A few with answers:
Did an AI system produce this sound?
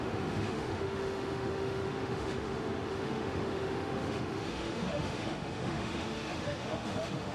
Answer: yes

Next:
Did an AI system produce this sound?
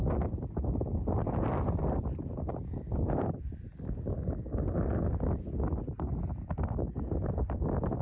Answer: no